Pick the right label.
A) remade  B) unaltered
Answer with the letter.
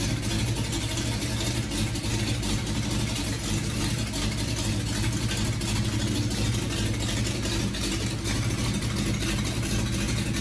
B